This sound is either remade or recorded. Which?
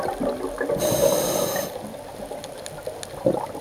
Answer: recorded